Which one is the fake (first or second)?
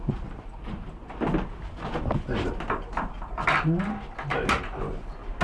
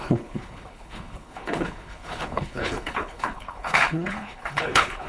second